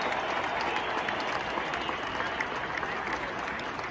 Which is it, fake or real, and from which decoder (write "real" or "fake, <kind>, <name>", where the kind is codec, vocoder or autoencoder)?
real